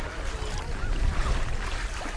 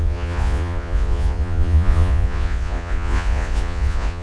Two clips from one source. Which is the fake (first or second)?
second